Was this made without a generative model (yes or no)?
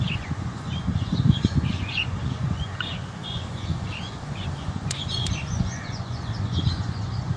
no